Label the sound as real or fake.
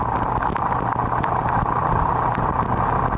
real